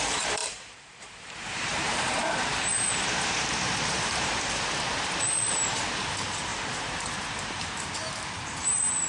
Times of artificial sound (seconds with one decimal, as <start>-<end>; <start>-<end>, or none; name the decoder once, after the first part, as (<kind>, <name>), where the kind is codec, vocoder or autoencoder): 0.0-9.1 (vocoder, BigVGAN v2)

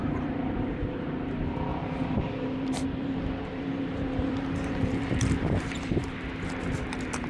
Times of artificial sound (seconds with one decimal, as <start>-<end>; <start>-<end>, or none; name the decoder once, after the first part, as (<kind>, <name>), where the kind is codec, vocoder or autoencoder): 0.0-1.1 (vocoder, BigVGAN v2); 1.7-6.1